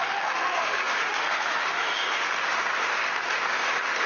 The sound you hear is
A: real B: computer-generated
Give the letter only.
B